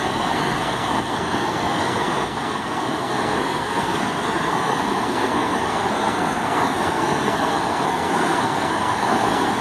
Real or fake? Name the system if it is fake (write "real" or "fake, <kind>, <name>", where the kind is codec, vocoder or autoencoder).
fake, codec, SNAC